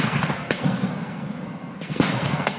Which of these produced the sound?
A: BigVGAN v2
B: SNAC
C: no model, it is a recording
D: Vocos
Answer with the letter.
B